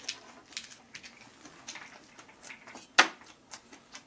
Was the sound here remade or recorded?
recorded